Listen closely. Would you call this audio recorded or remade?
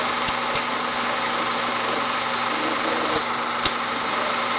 recorded